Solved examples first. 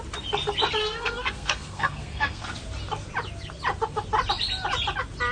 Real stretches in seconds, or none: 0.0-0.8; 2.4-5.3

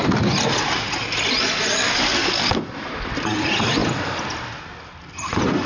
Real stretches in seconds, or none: 0.0-5.7

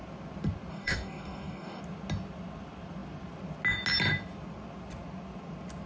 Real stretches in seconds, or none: 0.0-0.7; 1.8-5.9

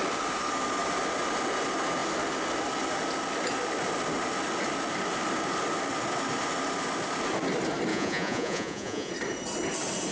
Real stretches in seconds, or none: 0.0-7.9; 9.1-10.1

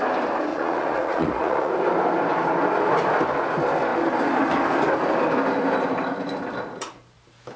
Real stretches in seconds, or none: 0.0-0.5; 1.7-7.6

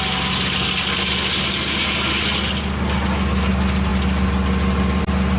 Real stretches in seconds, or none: 0.0-5.4

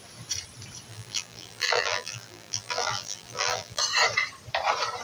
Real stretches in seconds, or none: 0.0-0.9; 3.8-5.0

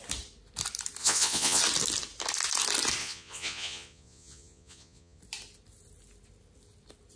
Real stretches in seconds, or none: 0.0-1.0; 1.6-3.0; 5.2-7.2